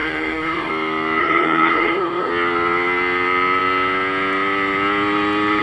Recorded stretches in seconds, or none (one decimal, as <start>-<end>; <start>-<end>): 0.7-1.2; 2.3-5.6